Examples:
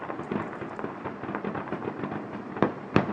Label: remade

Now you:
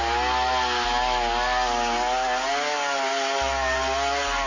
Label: recorded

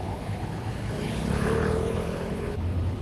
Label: remade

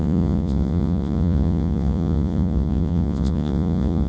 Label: remade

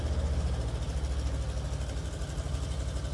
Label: recorded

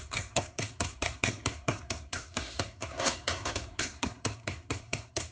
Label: remade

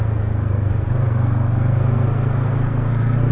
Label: remade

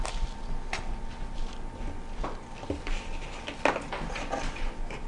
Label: recorded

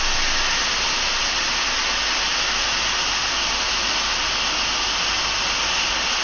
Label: recorded